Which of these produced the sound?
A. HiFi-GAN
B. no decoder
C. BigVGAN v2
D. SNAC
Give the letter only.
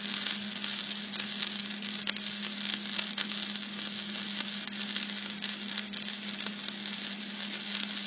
B